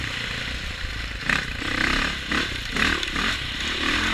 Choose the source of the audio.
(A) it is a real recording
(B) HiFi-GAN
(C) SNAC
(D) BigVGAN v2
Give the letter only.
D